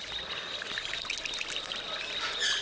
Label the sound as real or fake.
real